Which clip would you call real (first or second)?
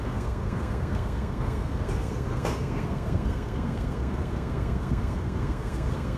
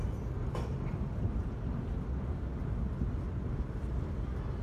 second